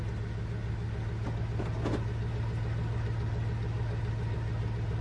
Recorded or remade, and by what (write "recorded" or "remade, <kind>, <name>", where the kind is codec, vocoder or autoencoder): recorded